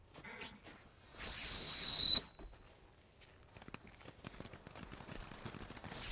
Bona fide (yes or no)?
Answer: yes